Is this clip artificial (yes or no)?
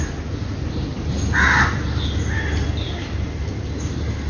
no